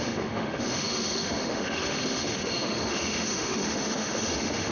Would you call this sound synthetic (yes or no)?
yes